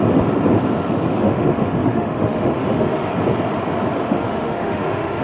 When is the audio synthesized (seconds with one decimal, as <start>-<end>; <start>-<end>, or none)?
1.2-3.1; 4.0-5.2